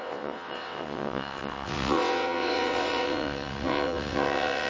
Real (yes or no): no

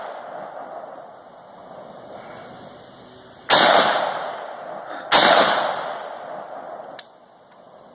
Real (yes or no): yes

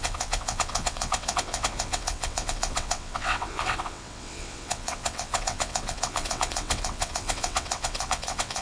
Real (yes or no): no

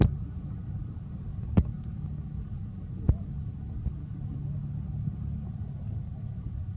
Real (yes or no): yes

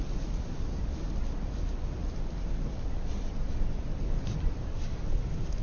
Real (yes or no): yes